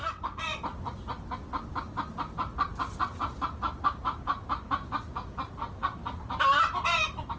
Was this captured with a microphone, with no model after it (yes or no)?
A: yes